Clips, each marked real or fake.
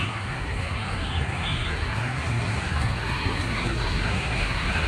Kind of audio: fake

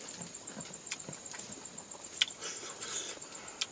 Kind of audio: real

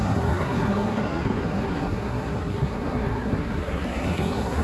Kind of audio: fake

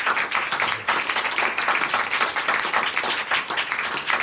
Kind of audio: real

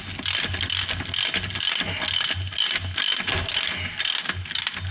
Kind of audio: real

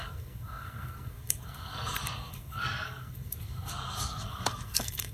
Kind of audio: fake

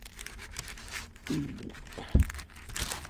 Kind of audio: real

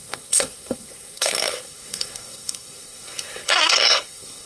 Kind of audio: fake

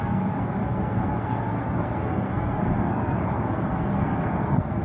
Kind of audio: fake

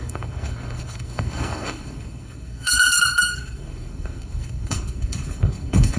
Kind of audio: fake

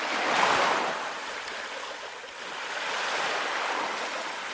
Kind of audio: real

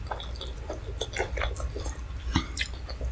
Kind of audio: real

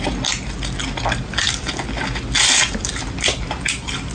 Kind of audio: real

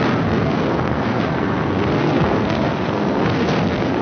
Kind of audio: fake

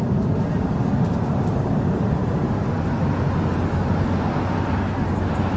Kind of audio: real